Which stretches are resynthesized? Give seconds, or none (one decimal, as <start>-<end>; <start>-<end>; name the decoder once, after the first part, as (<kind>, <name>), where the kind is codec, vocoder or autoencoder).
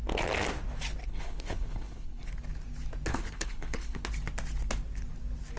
1.0-2.3 (codec, HILCodec); 3.1-4.0